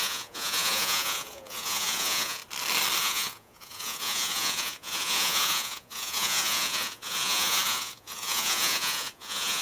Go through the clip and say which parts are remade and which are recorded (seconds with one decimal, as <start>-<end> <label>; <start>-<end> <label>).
0.0-2.4 remade; 2.4-3.0 recorded; 3.0-9.6 remade